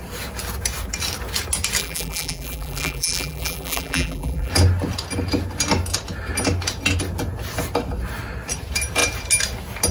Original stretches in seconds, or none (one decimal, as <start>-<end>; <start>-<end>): 0.0-1.8; 4.5-9.9